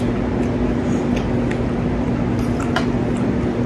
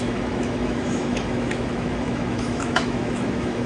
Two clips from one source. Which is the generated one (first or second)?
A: second